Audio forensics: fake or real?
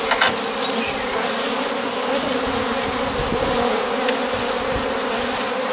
real